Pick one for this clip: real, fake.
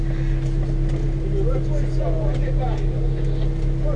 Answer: real